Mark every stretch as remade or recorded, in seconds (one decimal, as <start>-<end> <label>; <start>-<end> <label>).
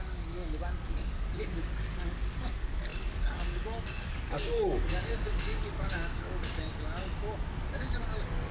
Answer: 0.0-6.7 remade; 6.7-7.6 recorded; 7.6-8.5 remade